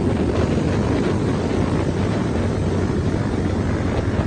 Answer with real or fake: real